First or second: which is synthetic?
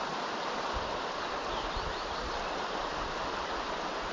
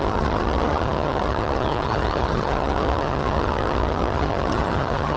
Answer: second